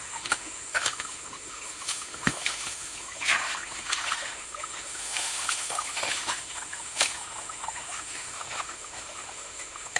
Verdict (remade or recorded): remade